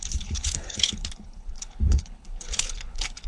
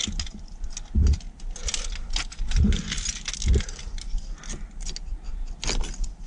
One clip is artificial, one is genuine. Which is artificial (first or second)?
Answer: first